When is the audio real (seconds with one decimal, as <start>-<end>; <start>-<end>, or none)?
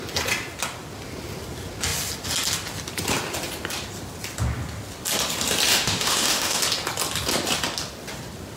0.0-5.7; 6.6-8.6